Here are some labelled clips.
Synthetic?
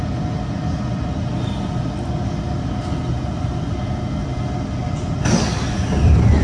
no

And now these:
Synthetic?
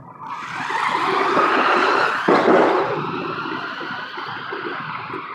no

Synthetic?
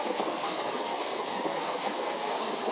yes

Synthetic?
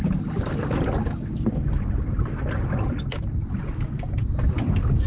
no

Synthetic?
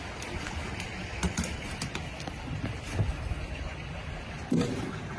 no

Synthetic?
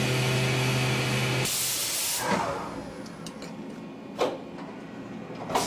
no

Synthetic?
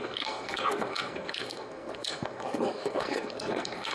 yes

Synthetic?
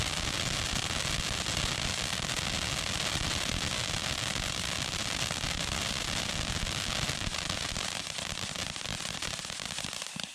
no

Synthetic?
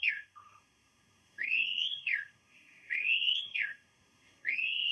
yes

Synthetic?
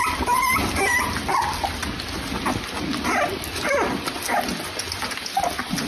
no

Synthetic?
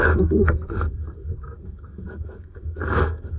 yes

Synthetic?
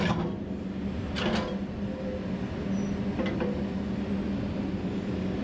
no